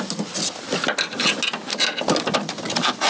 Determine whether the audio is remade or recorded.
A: recorded